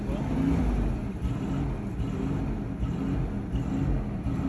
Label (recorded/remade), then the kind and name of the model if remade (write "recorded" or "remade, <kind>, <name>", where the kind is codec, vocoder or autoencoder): recorded